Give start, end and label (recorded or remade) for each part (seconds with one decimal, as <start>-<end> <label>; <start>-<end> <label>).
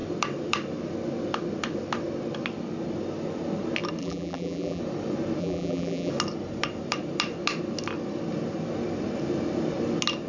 0.0-4.0 recorded; 4.0-4.8 remade; 4.8-5.4 recorded; 5.4-6.1 remade; 6.1-10.3 recorded